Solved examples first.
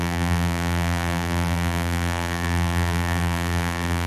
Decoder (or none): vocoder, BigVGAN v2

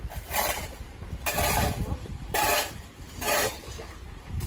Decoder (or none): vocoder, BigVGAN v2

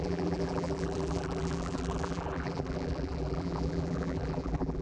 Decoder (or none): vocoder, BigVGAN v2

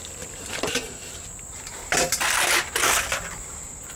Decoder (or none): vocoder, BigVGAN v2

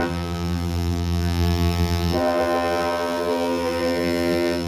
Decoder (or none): vocoder, BigVGAN v2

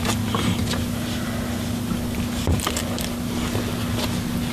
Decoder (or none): none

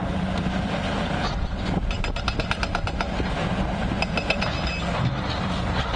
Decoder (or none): none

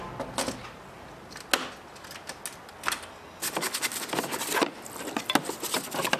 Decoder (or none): none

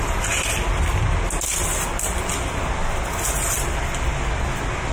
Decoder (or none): none